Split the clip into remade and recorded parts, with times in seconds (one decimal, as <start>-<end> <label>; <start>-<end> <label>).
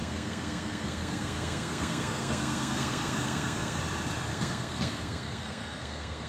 0.0-3.8 remade; 3.8-4.3 recorded; 4.3-6.3 remade